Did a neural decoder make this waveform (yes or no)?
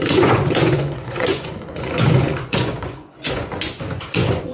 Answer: yes